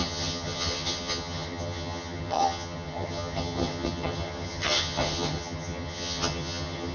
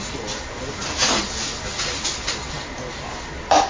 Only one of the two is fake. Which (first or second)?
first